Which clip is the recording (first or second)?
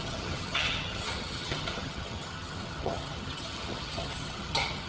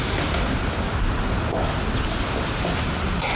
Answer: second